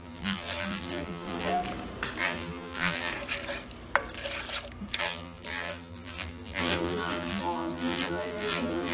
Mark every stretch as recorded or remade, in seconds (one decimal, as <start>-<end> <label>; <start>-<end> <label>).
0.0-1.6 remade; 1.6-2.2 recorded; 2.2-3.1 remade; 3.1-5.0 recorded; 5.0-8.9 remade